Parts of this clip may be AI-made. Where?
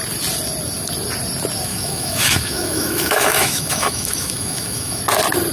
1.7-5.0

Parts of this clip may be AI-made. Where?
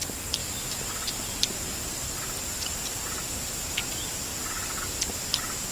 none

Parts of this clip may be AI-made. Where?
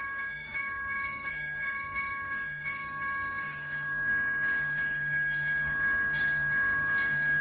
0.0-7.4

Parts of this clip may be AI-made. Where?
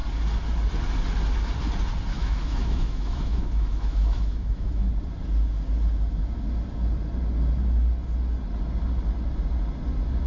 2.1-4.9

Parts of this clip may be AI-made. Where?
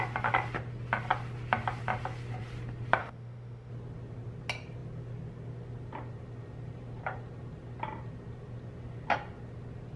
3.0-3.7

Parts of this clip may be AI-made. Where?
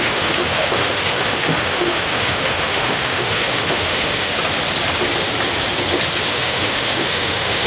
0.0-4.3; 6.3-7.7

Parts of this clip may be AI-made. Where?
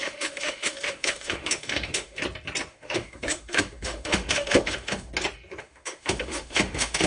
0.0-2.2; 2.7-5.1; 5.6-7.1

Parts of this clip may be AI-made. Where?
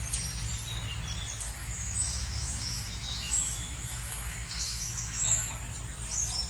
1.6-5.5